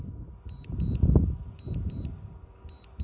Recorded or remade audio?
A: recorded